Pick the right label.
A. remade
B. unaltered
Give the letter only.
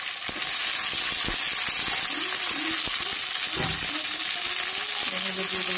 B